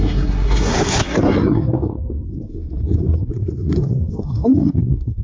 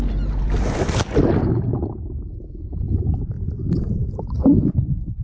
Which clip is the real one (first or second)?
second